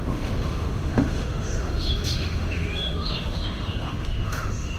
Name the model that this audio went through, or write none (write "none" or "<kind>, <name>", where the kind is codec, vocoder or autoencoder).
autoencoder, DAC-VAE